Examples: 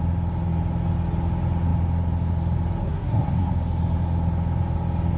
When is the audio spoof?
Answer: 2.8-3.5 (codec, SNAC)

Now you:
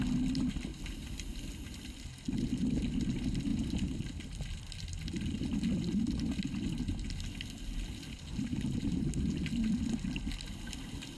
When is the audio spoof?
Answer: 0.7-1.4 (vocoder, BigVGAN v2); 3.5-4.0

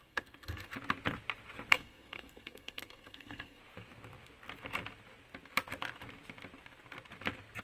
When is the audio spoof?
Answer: 0.0-0.7 (codec, SNAC); 1.7-3.6

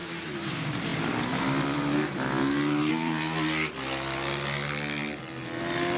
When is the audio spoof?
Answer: none

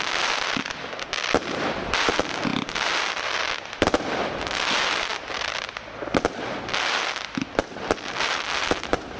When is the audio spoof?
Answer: none

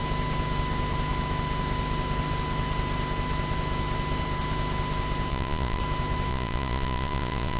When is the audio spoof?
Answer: 5.3-5.8 (vocoder, Vocos); 6.3-7.6

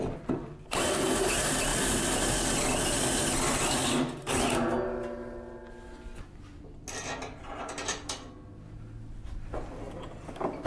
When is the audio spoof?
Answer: none

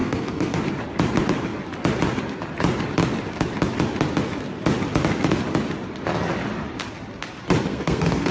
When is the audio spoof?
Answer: 0.0-0.6 (codec, SNAC); 7.7-8.3